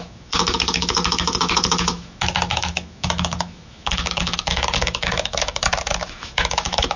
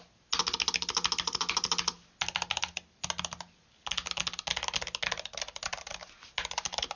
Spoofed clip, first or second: first